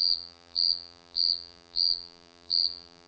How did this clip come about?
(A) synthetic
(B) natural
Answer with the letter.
A